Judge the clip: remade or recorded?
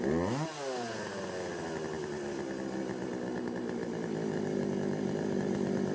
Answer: recorded